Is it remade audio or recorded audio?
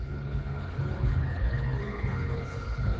remade